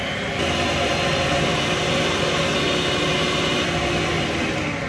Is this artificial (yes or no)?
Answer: no